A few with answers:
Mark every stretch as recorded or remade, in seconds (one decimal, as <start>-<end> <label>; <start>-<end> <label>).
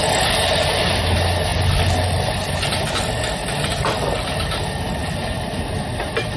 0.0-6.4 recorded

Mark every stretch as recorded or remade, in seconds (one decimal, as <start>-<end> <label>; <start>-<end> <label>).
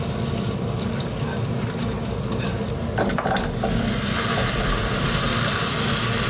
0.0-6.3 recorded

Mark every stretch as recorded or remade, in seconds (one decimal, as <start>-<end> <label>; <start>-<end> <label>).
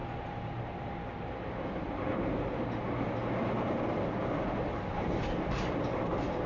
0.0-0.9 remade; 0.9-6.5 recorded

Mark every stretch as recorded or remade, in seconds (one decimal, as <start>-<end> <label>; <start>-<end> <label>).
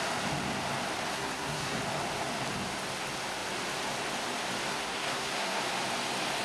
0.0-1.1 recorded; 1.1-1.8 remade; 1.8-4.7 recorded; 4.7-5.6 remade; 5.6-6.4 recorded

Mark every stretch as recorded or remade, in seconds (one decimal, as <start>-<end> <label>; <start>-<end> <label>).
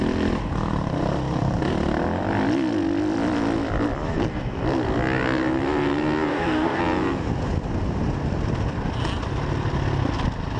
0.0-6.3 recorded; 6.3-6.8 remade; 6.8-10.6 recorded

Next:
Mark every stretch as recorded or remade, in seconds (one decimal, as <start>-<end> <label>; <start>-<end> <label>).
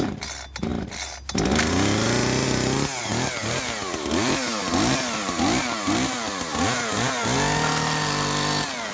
0.0-8.9 recorded